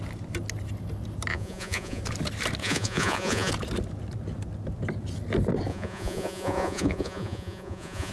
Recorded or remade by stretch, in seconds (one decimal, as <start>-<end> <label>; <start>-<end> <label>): 0.0-1.3 recorded; 1.3-2.0 remade; 2.0-2.6 recorded; 2.6-3.5 remade; 3.5-5.7 recorded; 5.7-8.1 remade